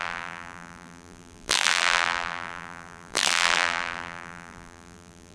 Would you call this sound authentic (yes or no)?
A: no